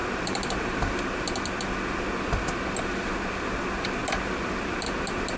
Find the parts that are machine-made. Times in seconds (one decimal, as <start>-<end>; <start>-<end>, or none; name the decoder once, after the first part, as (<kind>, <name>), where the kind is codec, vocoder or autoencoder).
0.0-1.0 (vocoder, BigVGAN v2)